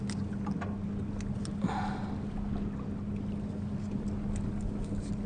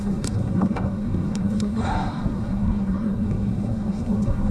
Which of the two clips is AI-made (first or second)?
second